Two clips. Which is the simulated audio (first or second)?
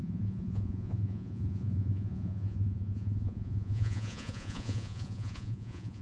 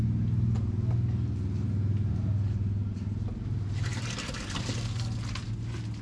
first